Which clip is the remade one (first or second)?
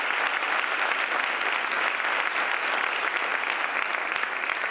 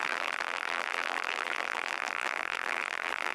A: second